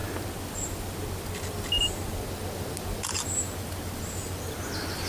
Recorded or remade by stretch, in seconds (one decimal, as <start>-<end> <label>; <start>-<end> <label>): 0.0-5.1 recorded